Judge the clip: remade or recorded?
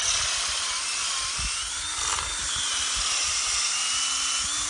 recorded